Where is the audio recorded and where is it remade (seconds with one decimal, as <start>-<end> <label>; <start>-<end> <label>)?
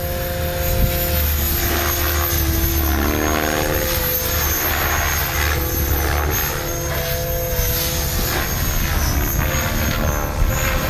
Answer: 0.0-10.9 recorded